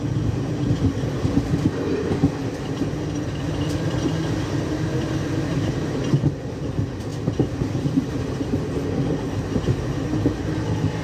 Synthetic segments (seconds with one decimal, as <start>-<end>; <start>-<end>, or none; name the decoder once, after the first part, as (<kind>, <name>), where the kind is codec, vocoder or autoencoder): none